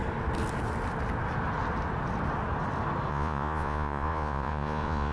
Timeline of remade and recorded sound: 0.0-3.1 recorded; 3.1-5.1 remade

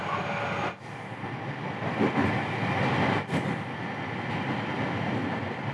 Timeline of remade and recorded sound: 0.0-5.7 recorded

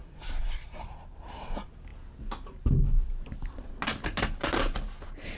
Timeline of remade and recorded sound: 0.0-0.8 remade; 0.8-5.4 recorded

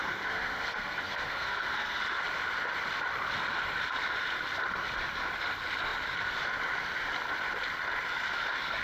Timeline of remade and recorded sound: 0.0-2.0 remade; 2.0-8.8 recorded

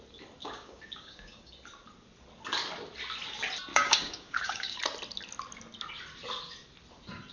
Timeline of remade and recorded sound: 0.0-0.4 recorded; 0.4-1.5 remade; 1.5-3.7 recorded; 3.7-4.8 remade; 4.8-7.3 recorded

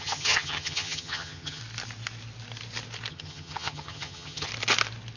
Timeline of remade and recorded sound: 0.0-1.6 remade; 1.6-3.1 recorded; 3.1-4.5 remade; 4.5-5.2 recorded